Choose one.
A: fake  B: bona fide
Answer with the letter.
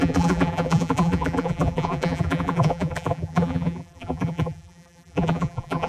A